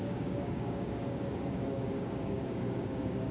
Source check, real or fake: fake